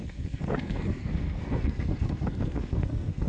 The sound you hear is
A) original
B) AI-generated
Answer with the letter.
B